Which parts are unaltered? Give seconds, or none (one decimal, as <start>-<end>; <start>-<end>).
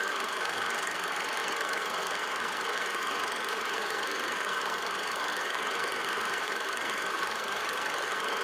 none